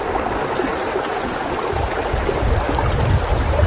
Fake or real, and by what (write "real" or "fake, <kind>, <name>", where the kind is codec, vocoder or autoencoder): fake, vocoder, BigVGAN v2